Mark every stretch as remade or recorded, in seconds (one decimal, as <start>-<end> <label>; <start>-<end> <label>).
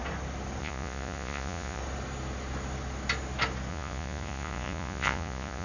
0.0-0.6 recorded; 0.6-1.8 remade; 1.8-3.7 recorded; 3.7-5.6 remade